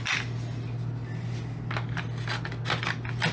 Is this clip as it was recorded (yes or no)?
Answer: yes